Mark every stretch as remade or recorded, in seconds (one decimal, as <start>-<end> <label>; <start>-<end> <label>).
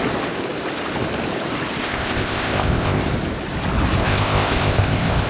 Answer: 0.0-1.8 recorded; 1.8-3.0 remade; 3.0-4.0 recorded; 4.0-5.3 remade